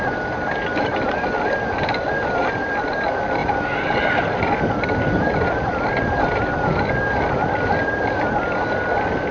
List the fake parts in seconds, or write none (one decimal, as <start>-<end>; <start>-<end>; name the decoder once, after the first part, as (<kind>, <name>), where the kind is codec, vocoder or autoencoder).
none